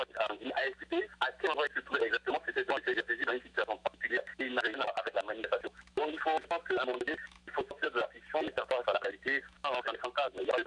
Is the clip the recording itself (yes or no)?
no